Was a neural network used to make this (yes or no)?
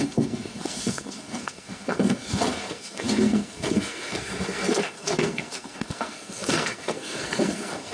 yes